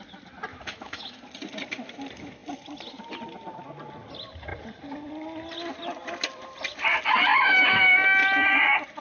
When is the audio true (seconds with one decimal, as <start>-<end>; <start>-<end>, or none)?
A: 0.0-0.5; 1.2-7.3; 7.8-9.0